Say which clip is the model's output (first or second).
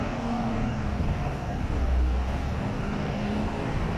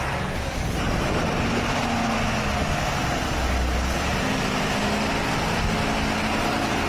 first